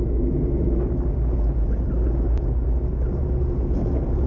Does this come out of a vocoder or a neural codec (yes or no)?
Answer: no